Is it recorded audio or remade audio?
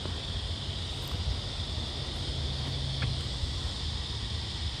recorded